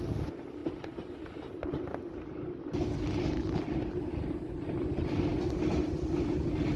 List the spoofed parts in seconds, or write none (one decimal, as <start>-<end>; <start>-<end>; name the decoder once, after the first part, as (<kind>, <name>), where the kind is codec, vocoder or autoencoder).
none